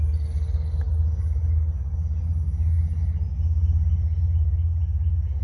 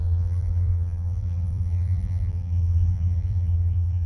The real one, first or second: first